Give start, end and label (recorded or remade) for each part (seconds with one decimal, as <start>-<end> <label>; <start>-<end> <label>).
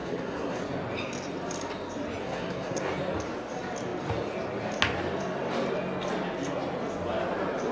0.0-0.6 remade; 0.6-2.2 recorded; 2.2-2.8 remade; 2.8-7.7 recorded